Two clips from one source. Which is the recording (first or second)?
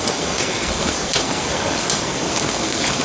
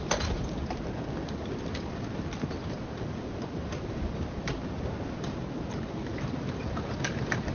second